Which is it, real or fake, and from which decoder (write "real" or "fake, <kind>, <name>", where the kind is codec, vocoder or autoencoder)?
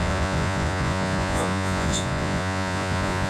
fake, vocoder, Vocos